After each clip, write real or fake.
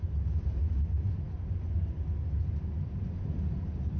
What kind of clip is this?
real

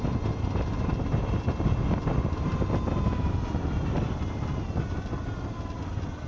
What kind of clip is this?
real